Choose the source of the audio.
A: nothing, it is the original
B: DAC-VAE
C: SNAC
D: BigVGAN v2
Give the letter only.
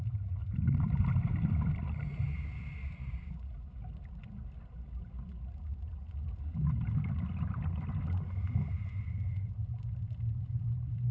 A